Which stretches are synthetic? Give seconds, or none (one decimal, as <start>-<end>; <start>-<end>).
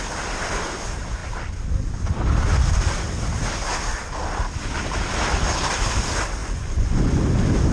6.4-7.2